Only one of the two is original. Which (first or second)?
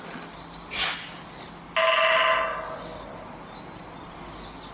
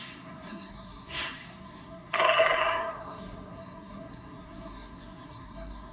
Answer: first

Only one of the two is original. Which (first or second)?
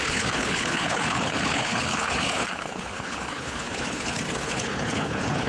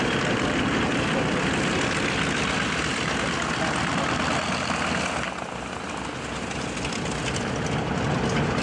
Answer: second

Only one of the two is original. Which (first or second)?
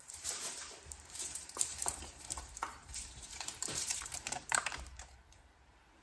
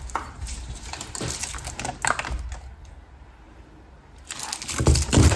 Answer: second